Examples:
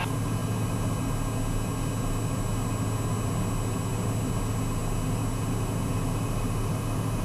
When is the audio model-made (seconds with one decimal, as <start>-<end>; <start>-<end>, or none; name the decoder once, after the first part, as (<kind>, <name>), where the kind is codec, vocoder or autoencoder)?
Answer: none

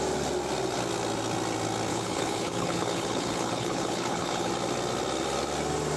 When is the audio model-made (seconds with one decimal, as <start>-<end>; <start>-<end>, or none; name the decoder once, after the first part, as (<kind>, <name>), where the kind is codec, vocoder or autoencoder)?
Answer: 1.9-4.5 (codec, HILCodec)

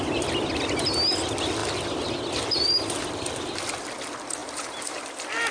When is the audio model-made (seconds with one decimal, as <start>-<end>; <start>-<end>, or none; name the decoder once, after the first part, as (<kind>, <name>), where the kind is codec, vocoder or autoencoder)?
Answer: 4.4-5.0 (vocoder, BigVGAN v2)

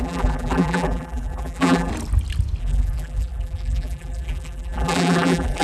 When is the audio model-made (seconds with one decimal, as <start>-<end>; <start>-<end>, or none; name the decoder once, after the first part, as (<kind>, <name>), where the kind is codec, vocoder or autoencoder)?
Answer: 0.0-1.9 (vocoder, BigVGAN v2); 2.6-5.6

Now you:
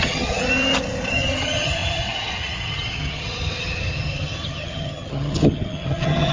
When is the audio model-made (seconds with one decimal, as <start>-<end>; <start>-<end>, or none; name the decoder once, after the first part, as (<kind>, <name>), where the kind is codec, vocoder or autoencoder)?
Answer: 0.0-0.4 (vocoder, HiFi-GAN); 1.1-6.3